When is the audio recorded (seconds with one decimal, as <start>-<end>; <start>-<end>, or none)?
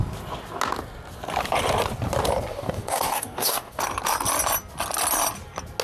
0.0-2.5; 3.8-5.8